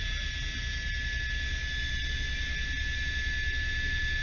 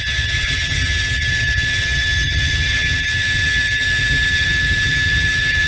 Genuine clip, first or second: first